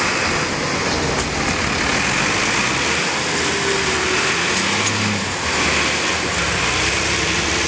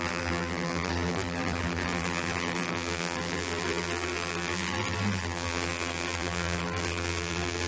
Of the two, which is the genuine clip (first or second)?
first